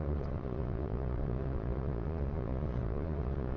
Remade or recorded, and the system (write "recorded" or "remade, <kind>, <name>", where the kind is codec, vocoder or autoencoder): remade, vocoder, Vocos